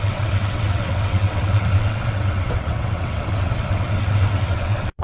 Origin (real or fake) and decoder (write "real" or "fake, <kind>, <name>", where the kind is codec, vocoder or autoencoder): fake, vocoder, WaveNeXt